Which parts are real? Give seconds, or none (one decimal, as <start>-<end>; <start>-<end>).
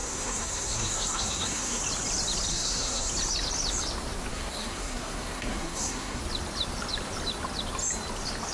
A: 1.8-2.5; 3.1-4.3; 6.2-8.5